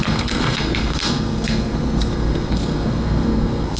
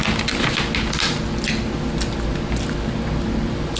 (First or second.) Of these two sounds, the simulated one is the first